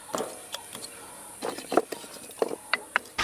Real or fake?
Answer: fake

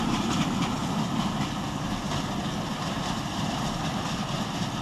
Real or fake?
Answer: real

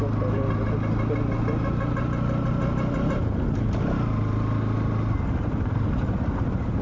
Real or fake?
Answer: real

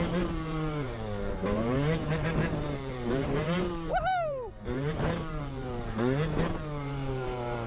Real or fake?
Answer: fake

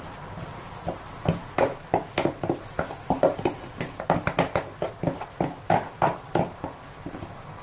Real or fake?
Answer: real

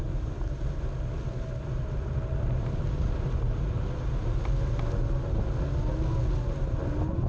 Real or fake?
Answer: real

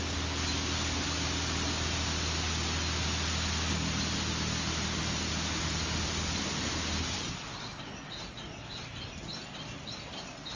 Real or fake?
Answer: real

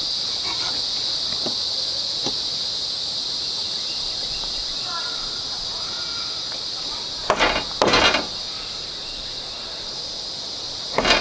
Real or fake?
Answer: real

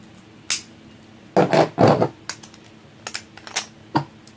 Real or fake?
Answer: real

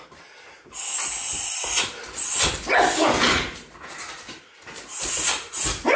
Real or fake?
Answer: real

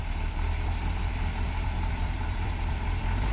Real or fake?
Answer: fake